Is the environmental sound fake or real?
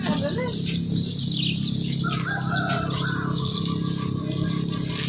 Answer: real